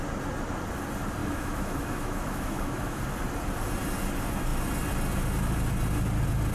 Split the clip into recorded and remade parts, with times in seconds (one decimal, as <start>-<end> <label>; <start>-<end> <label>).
0.0-1.2 recorded; 1.2-3.0 remade; 3.0-6.5 recorded